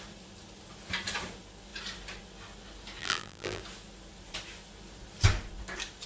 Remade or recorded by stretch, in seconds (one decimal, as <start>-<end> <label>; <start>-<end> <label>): 0.0-3.0 recorded; 3.0-3.6 remade; 3.6-6.1 recorded